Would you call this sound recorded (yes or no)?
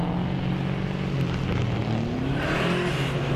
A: yes